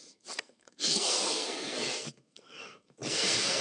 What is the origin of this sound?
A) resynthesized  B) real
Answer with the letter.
A